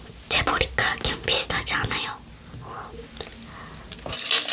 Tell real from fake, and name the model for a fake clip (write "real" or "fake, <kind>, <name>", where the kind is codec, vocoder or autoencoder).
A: real